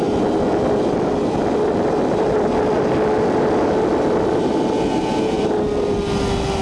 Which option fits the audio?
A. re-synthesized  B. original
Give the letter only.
B